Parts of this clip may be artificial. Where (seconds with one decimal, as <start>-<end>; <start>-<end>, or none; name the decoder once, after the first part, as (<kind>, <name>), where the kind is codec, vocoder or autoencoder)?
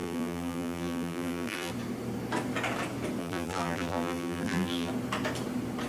0.0-1.7 (vocoder, BigVGAN v2); 3.2-4.9